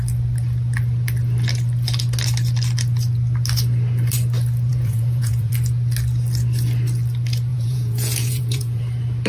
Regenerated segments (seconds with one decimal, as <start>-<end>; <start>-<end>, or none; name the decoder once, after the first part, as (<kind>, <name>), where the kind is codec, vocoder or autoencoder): 4.7-5.5 (vocoder, Vocos); 7.5-8.8